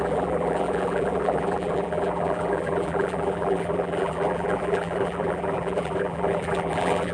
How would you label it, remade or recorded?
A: remade